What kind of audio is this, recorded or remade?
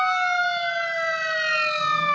recorded